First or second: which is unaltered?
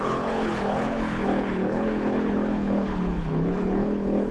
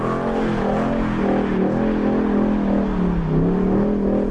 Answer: second